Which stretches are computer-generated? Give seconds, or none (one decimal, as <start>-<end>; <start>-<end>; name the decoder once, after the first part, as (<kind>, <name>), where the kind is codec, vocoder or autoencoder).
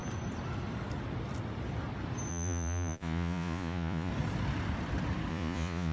2.3-4.1 (vocoder, Vocos); 5.3-5.9